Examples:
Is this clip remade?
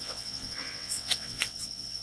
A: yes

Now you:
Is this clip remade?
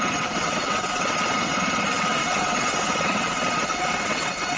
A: yes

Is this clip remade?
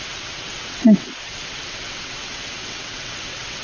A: yes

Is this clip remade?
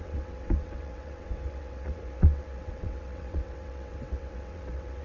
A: yes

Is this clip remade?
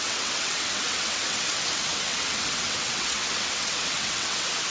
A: yes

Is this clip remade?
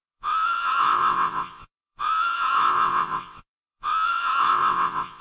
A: yes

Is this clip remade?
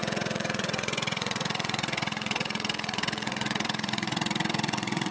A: yes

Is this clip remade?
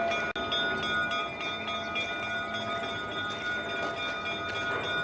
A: no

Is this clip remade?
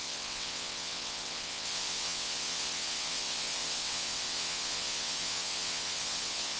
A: yes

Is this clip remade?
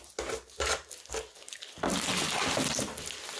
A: no